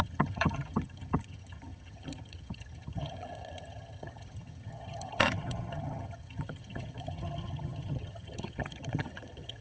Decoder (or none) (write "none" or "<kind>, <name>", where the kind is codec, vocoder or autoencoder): vocoder, HiFi-GAN